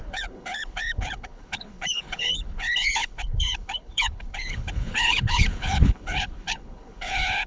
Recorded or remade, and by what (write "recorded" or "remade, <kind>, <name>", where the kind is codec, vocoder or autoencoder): remade, codec, HILCodec